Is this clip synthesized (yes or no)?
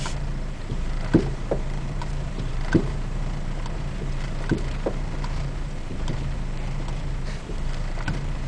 yes